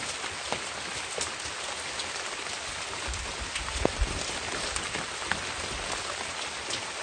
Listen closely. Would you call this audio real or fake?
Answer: real